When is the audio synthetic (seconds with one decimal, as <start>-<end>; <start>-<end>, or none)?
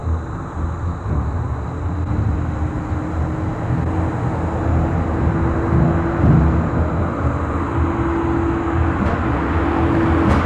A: none